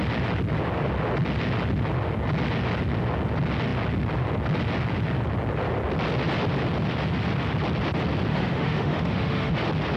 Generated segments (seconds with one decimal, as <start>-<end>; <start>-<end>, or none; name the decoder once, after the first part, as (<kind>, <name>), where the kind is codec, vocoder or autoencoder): 8.3-9.5 (autoencoder, DAC-VAE)